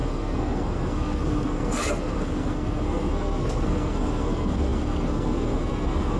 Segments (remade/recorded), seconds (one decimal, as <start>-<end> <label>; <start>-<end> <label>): 0.0-6.2 remade